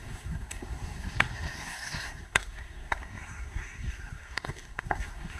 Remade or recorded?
remade